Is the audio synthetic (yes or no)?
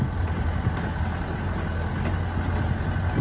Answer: no